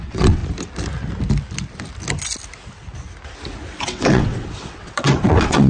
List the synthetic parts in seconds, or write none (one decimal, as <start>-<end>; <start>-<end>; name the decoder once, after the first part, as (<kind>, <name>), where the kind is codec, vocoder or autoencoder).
0.0-0.4 (vocoder, WaveNeXt); 3.8-5.7